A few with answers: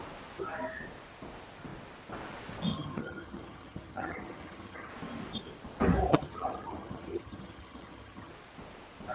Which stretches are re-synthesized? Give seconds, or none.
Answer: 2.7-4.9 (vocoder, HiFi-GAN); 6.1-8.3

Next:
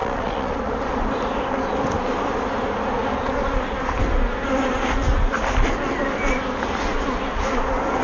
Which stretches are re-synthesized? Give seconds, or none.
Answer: 0.0-0.7 (vocoder, Vocos)

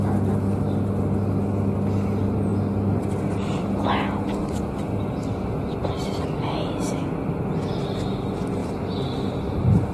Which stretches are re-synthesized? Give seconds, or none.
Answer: 8.6-9.9 (vocoder, BigVGAN v2)

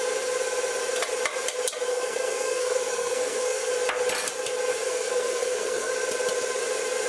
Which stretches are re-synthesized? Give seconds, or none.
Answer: 1.9-3.7 (codec, SNAC); 4.7-5.9

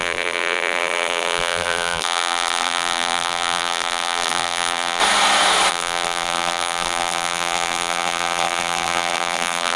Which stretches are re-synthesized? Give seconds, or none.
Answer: 0.0-5.0 (vocoder, BigVGAN v2); 5.7-9.8

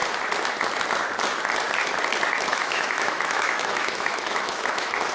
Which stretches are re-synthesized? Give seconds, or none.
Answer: 2.5-5.1 (autoencoder, DAC-VAE)

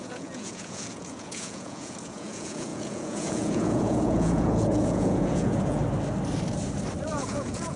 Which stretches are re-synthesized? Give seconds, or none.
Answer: 0.0-5.8 (vocoder, Vocos); 7.1-7.8